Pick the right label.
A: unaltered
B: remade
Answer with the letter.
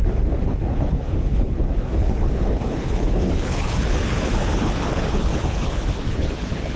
B